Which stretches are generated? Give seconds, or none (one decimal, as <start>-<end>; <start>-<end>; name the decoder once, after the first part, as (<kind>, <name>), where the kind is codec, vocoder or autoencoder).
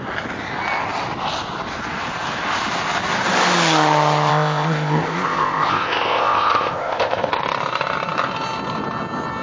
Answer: 4.3-7.4 (codec, ZipCodec)